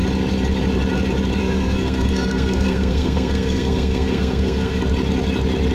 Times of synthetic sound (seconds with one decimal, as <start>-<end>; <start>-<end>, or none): 1.4-4.8